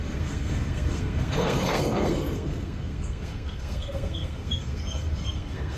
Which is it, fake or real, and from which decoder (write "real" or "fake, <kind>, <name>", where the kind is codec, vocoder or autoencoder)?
fake, codec, SNAC